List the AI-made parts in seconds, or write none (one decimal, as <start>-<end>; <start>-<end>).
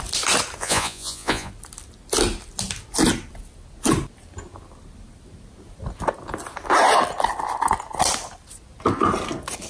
0.6-1.5